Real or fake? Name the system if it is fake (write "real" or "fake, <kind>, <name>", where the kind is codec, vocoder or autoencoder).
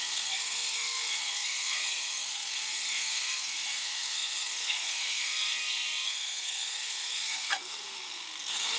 fake, codec, SNAC